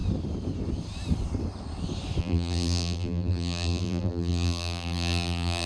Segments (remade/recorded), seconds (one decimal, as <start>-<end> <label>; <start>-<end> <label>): 0.0-2.2 recorded; 2.2-5.7 remade